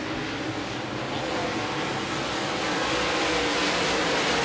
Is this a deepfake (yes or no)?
no